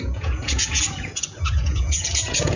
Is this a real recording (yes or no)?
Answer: no